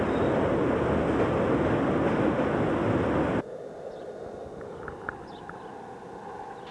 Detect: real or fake real